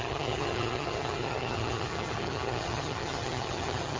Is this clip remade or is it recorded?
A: remade